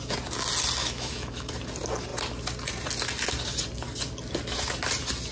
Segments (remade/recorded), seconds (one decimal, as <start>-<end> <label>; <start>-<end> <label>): 0.0-0.8 recorded; 0.8-1.5 remade; 1.5-5.3 recorded

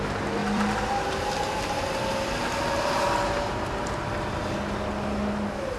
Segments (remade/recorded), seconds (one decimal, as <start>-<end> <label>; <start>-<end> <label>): 0.0-0.4 recorded; 0.4-2.0 remade; 2.0-5.8 recorded

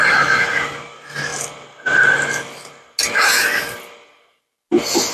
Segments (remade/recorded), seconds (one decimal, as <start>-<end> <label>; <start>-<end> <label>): 0.0-5.1 recorded

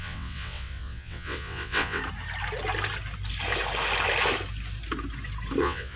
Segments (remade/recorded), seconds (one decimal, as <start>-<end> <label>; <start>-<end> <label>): 0.0-2.0 remade; 2.0-5.6 recorded; 5.6-6.0 remade